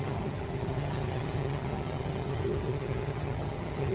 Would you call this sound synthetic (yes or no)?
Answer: yes